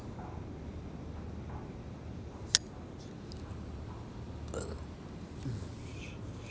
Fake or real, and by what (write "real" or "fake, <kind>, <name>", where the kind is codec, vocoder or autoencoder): real